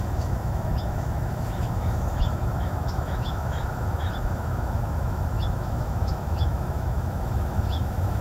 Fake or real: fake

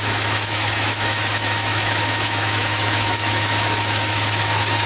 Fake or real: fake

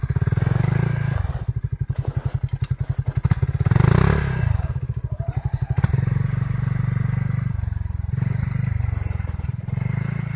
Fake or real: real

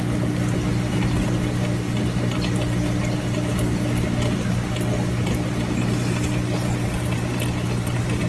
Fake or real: real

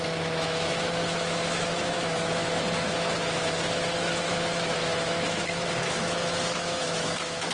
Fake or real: fake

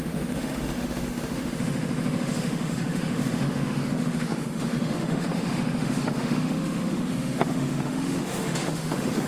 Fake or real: fake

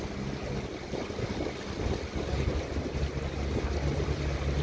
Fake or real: real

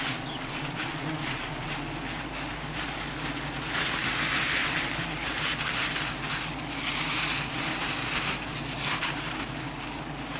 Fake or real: real